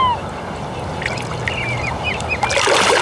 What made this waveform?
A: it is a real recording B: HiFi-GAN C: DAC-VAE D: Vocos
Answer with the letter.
A